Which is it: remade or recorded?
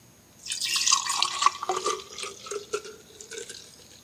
recorded